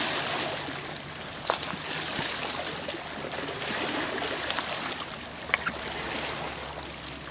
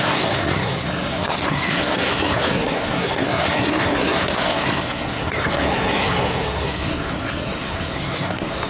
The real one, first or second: first